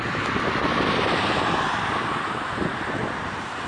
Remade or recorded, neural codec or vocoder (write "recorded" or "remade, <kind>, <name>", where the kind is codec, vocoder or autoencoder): recorded